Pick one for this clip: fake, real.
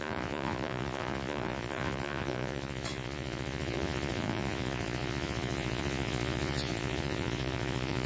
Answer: fake